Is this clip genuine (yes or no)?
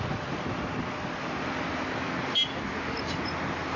yes